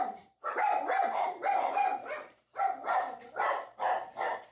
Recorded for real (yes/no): no